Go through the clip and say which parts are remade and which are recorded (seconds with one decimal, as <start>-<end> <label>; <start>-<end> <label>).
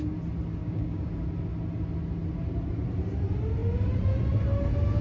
0.0-0.6 recorded; 0.6-1.1 remade; 1.1-5.0 recorded